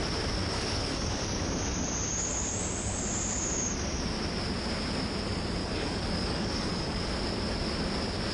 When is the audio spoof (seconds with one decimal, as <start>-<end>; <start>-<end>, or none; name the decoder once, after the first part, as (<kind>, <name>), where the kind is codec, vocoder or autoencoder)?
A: 0.4-1.4 (codec, DAC); 5.6-7.1